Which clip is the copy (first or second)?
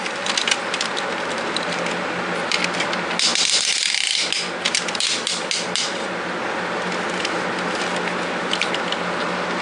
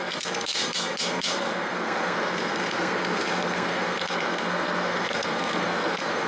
second